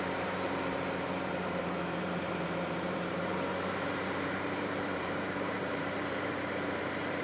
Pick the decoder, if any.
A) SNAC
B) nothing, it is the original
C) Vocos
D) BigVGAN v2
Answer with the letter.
D